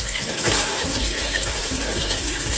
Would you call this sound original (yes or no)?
no